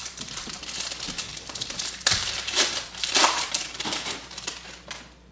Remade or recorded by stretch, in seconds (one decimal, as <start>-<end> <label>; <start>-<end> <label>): 0.0-0.6 remade; 0.6-1.3 recorded; 1.3-4.5 remade; 4.5-5.3 recorded